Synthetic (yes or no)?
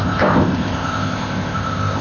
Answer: yes